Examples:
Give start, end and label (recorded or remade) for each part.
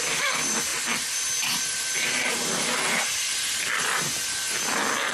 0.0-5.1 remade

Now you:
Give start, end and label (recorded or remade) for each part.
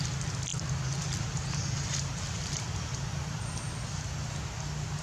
0.0-0.5 recorded; 0.5-3.5 remade; 3.5-5.0 recorded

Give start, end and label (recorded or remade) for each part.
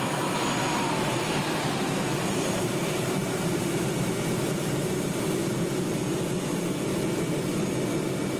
0.0-5.4 remade; 5.4-7.9 recorded; 7.9-8.4 remade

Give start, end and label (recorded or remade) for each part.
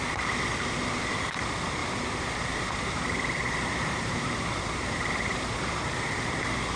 0.0-1.8 recorded; 1.8-5.9 remade; 5.9-6.8 recorded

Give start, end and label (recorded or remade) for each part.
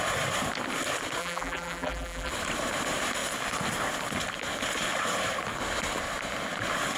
0.0-1.2 recorded; 1.2-2.3 remade; 2.3-7.0 recorded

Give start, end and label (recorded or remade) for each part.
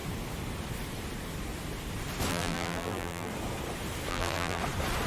0.0-2.3 recorded; 2.3-3.3 remade; 3.3-4.1 recorded; 4.1-4.6 remade; 4.6-5.1 recorded